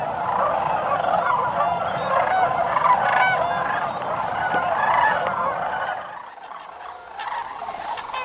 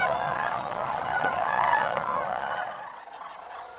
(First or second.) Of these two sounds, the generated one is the second